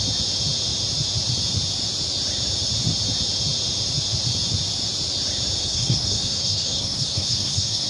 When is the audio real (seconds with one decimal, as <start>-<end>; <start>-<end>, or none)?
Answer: 0.0-5.6